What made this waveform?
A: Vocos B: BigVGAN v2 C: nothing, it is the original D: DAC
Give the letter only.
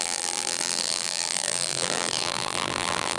B